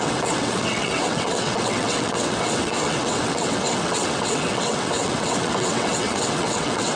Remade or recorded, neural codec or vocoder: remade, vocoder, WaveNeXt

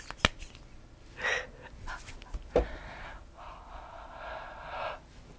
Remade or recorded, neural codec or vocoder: recorded